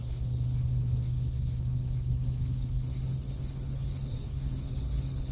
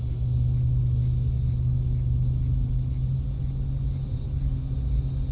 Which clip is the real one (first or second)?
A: second